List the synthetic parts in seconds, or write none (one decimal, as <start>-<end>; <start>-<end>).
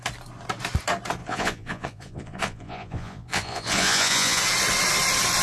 1.2-4.4